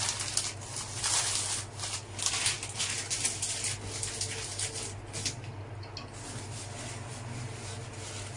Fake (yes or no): no